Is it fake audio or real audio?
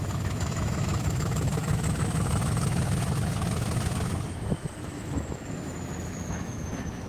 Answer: fake